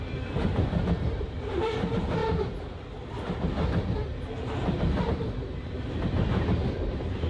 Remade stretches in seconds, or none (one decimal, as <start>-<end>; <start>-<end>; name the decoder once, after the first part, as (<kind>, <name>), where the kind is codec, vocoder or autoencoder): 0.0-2.2 (vocoder, BigVGAN v2); 5.0-7.3